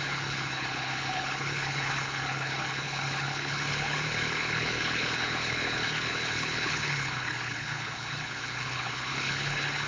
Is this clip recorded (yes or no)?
no